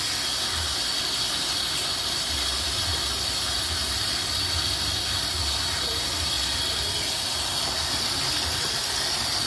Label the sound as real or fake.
real